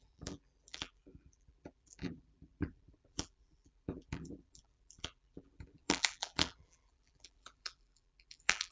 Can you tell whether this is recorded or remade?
remade